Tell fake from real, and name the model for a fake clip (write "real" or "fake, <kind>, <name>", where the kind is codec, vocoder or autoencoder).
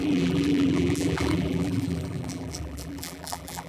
fake, vocoder, BigVGAN v2